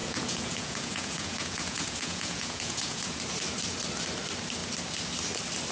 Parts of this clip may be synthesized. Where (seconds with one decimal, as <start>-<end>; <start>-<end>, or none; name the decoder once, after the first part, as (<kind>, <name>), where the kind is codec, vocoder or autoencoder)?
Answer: 0.0-3.2 (vocoder, Vocos)